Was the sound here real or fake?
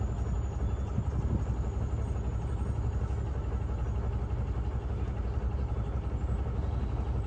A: real